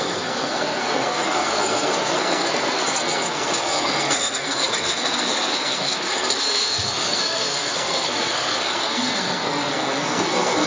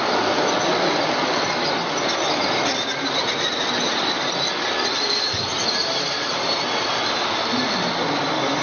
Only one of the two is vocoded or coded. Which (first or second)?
first